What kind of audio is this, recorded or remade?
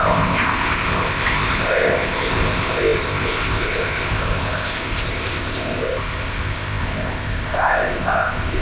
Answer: remade